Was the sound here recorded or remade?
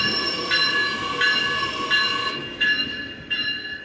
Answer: recorded